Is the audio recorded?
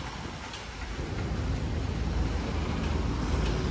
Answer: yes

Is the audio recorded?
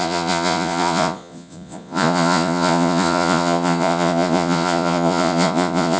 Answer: no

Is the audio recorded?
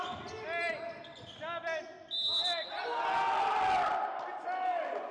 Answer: yes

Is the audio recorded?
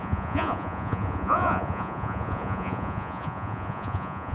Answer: no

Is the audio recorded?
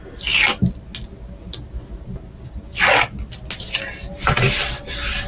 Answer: yes